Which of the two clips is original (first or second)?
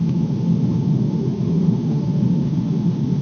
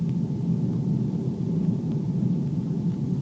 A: second